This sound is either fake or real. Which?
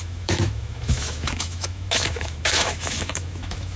fake